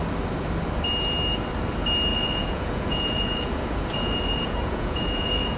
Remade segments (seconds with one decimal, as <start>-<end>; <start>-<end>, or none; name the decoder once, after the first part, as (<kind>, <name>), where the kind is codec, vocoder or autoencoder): 2.1-5.6 (vocoder, Vocos)